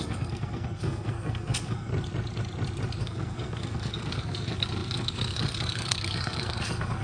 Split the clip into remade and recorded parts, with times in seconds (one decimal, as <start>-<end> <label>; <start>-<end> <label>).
0.0-1.9 remade; 1.9-3.0 recorded; 3.0-7.0 remade